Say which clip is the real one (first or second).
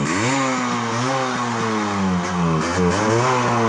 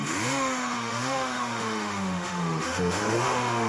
first